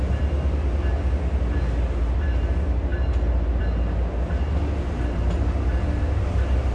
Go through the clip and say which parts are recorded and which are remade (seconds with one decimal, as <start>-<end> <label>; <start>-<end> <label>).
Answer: 0.0-6.7 recorded